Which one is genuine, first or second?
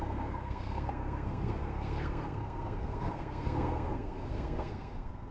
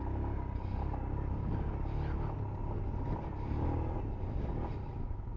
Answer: second